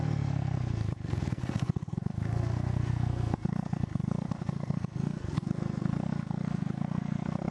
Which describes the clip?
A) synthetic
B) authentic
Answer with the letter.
A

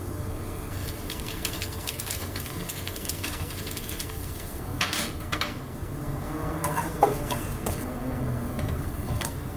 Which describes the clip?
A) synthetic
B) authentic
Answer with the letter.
A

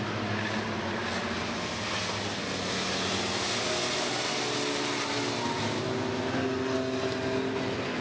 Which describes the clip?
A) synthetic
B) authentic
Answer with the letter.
B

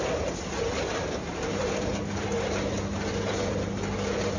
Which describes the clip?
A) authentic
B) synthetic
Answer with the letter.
A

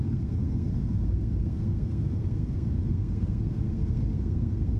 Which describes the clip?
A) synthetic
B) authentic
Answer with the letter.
A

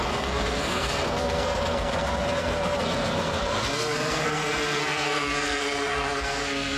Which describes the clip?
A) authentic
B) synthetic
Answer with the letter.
B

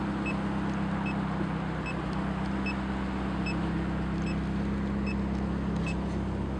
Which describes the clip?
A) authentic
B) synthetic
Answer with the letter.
A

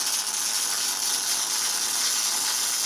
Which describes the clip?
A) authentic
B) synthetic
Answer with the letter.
A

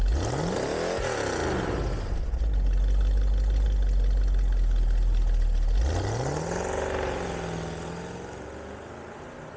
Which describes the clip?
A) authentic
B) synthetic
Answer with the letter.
A